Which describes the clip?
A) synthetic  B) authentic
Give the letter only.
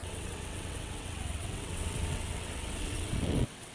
A